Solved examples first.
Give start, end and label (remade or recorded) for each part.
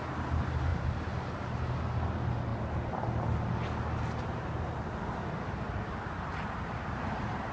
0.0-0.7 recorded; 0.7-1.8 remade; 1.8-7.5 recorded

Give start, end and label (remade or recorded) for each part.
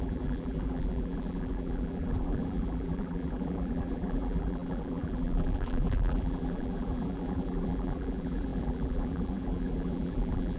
0.0-10.6 remade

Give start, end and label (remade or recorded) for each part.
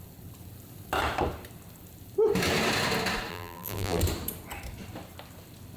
0.0-3.3 recorded; 3.3-4.0 remade; 4.0-5.8 recorded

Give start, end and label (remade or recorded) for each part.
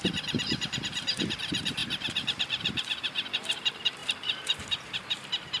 0.0-5.6 remade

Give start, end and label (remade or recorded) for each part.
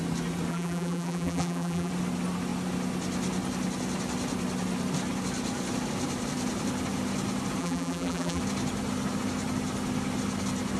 0.0-0.5 recorded; 0.5-1.9 remade; 1.9-7.6 recorded; 7.6-8.4 remade; 8.4-10.8 recorded